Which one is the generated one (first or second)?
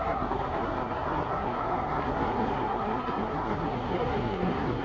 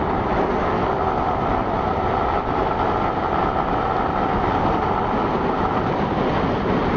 first